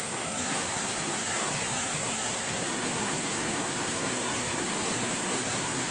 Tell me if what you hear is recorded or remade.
remade